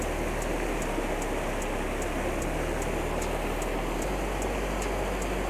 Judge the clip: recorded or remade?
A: recorded